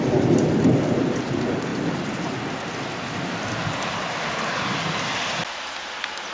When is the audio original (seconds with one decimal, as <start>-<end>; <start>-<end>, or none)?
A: 0.0-6.3